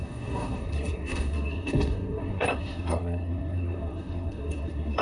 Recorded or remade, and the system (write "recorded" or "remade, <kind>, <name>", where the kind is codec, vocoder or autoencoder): remade, codec, SNAC